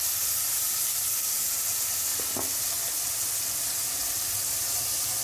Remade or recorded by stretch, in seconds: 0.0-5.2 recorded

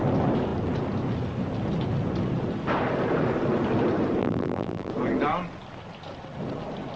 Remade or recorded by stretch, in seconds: 0.0-4.2 recorded; 4.2-4.9 remade; 4.9-7.0 recorded

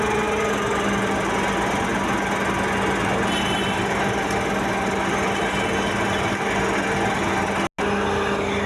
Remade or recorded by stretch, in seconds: 0.0-8.7 recorded

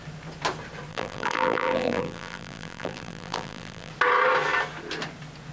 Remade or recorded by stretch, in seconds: 0.0-0.9 recorded; 0.9-3.9 remade; 3.9-5.5 recorded

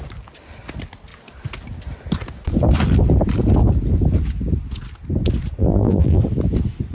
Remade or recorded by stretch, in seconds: 0.0-5.6 recorded; 5.6-6.2 remade; 6.2-6.9 recorded

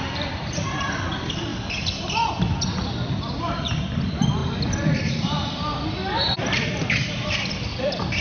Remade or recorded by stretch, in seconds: 0.0-1.5 remade; 1.5-2.7 recorded; 2.7-8.2 remade

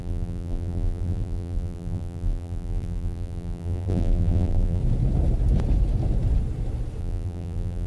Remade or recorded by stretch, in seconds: 0.0-4.8 remade; 4.8-7.0 recorded; 7.0-7.9 remade